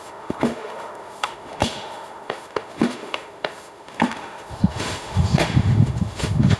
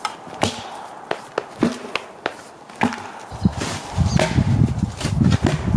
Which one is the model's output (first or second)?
first